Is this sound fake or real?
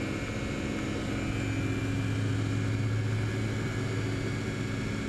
real